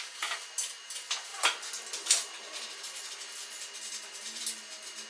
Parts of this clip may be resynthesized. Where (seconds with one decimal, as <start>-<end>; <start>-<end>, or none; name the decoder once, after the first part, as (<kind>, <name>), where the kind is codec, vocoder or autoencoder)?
none